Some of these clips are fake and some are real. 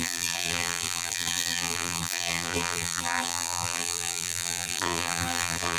fake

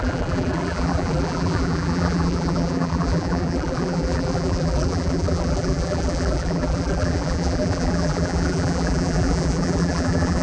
fake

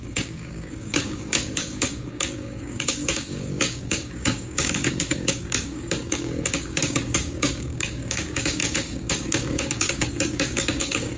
fake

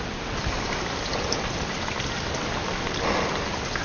real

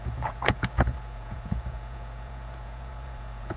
fake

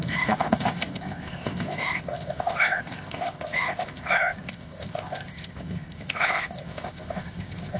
fake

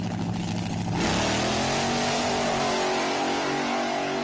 real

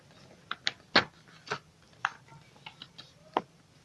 real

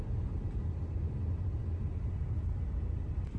real